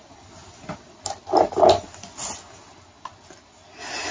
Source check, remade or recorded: recorded